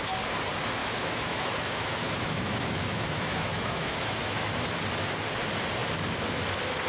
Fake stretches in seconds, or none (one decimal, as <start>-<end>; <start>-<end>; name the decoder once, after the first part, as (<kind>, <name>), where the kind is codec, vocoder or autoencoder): 0.8-4.5 (autoencoder, DAC-VAE)